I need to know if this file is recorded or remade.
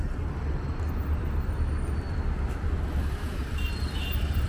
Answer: recorded